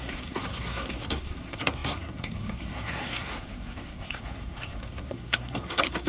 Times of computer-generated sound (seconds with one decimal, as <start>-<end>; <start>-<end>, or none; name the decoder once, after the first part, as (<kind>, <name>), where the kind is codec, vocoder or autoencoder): 0.0-6.1 (codec, SNAC)